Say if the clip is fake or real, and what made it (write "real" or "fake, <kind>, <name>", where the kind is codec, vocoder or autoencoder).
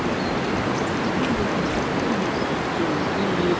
real